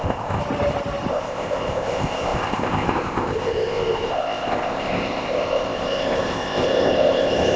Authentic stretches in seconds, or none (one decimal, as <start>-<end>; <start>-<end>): 0.4-1.1